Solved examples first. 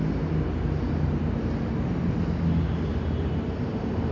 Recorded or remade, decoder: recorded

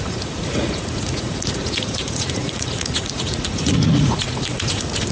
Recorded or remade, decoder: remade, vocoder, Vocos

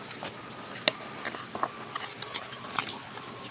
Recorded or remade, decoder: recorded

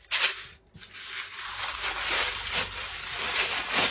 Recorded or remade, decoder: recorded